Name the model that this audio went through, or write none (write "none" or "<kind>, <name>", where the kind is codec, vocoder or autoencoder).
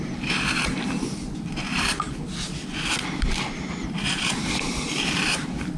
vocoder, BigVGAN v2